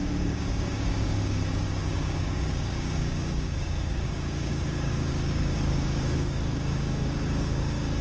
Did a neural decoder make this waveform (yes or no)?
yes